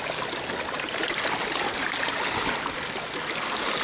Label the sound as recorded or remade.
recorded